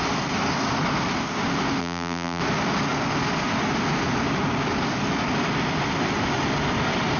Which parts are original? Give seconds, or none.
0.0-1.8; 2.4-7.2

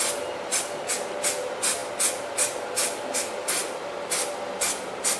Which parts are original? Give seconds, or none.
0.0-5.2